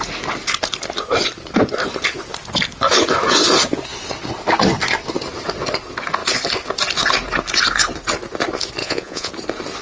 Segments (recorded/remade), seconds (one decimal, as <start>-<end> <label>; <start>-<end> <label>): 0.0-8.8 recorded; 8.8-9.3 remade; 9.3-9.8 recorded